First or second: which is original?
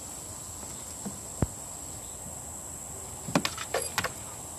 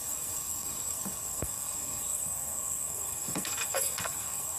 first